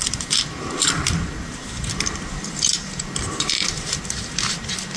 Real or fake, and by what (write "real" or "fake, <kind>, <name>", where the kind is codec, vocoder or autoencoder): fake, vocoder, BigVGAN v2